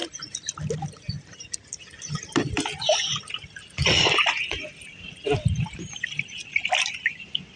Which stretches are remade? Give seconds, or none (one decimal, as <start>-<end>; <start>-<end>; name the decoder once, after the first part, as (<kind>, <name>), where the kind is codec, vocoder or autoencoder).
none